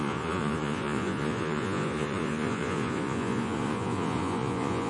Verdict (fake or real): fake